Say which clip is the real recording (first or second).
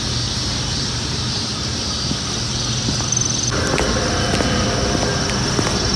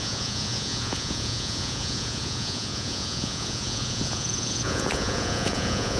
first